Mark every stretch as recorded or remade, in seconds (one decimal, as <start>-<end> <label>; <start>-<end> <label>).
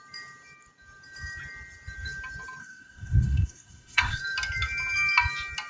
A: 0.0-2.6 recorded; 2.6-4.2 remade; 4.2-5.7 recorded